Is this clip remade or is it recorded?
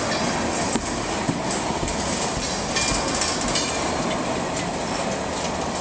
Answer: recorded